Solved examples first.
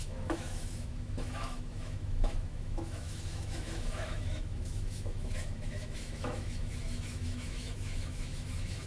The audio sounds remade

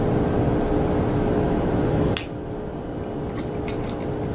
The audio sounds recorded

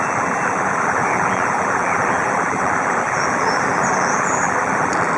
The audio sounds remade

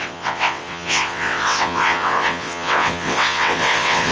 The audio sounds remade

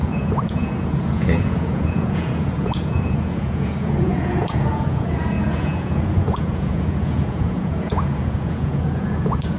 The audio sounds remade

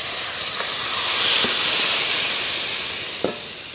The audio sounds recorded